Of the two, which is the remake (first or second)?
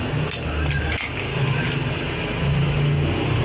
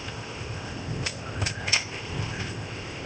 second